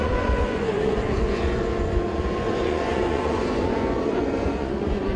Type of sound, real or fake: fake